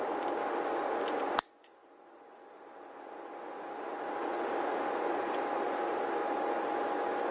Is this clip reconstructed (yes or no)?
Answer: no